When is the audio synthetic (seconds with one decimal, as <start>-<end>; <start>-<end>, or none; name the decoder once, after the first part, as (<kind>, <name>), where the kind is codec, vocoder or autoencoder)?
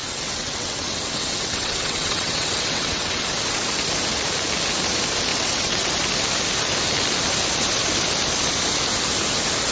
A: 0.0-3.2 (vocoder, WaveNeXt); 5.3-5.9